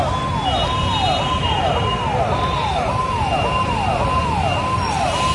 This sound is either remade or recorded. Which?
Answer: recorded